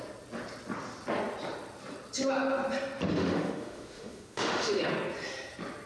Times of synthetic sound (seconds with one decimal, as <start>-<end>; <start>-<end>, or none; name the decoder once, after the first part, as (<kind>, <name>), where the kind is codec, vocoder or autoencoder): 3.2-4.9 (autoencoder, DAC-VAE)